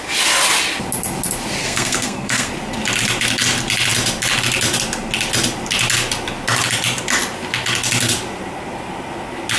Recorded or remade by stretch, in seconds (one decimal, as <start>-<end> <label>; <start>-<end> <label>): 0.0-1.6 recorded; 1.6-2.5 remade; 2.5-9.6 recorded